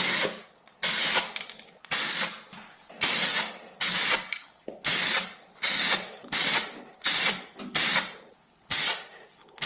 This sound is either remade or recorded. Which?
recorded